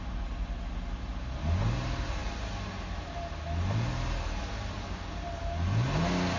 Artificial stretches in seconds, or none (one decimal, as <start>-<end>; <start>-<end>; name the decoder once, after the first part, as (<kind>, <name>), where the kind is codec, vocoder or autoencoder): none